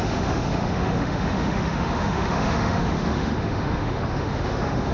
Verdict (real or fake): fake